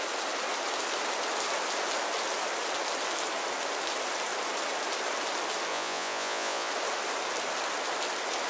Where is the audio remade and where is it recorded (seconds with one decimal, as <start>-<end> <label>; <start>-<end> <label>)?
0.0-5.7 recorded; 5.7-6.7 remade; 6.7-8.5 recorded